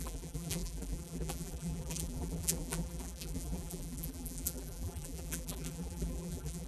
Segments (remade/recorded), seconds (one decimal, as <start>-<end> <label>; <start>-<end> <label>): 0.0-6.7 remade